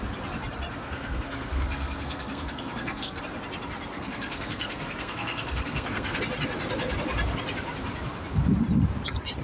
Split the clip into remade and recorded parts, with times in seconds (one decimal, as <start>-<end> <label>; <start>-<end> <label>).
0.0-0.8 recorded; 0.8-3.2 remade; 3.2-3.9 recorded; 3.9-6.2 remade; 6.2-9.4 recorded